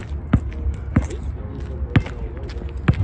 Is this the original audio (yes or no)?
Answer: yes